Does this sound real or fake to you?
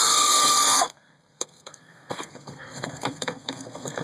fake